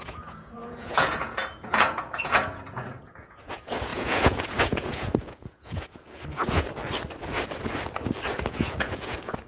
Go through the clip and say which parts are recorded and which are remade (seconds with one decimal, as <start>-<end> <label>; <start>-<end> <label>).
0.0-6.8 remade; 6.8-8.5 recorded; 8.5-9.5 remade